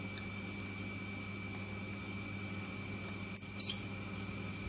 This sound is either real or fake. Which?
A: real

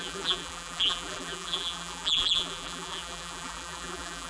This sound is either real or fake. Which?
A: fake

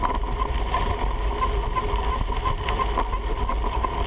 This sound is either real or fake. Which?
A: real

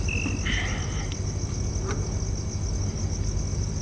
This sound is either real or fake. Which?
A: real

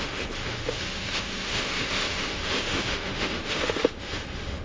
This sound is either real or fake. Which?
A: fake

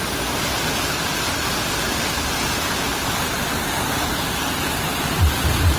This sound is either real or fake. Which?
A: real